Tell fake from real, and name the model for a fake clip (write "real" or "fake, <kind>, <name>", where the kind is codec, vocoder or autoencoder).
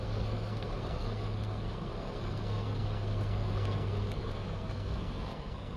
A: fake, codec, SNAC